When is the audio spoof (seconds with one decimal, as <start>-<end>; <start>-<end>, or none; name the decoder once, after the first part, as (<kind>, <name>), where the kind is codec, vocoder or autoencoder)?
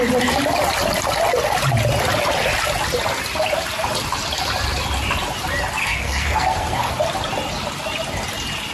5.8-6.9 (codec, SNAC)